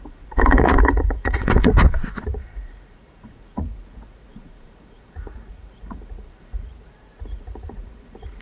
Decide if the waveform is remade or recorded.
remade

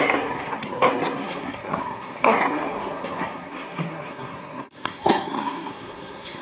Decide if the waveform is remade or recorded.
remade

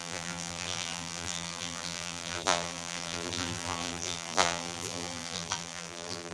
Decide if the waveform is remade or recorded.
remade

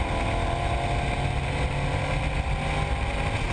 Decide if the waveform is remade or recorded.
recorded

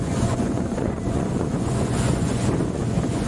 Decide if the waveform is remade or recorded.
remade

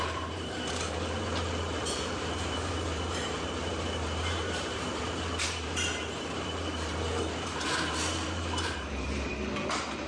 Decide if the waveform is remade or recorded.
remade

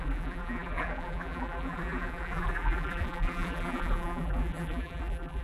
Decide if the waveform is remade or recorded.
remade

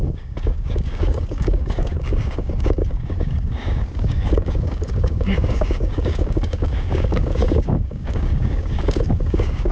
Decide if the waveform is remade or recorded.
remade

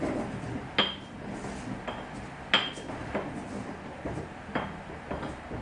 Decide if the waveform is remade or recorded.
recorded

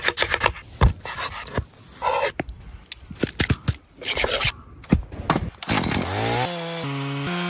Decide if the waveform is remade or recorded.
recorded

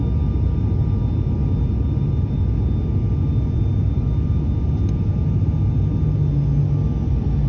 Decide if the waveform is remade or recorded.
recorded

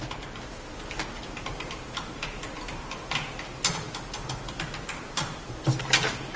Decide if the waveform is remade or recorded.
recorded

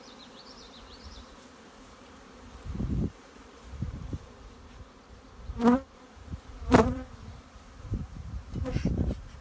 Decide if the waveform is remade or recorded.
remade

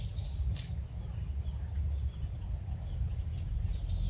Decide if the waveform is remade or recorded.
recorded